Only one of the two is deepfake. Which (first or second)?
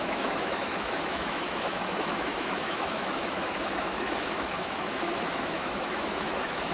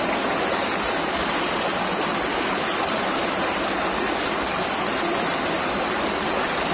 first